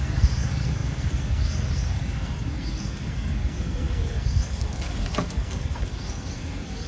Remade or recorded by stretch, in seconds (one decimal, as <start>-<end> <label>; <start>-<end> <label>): 0.0-6.9 remade